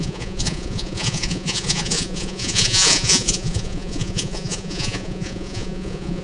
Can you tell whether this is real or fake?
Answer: fake